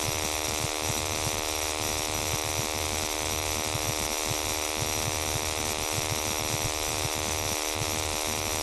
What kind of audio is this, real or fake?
real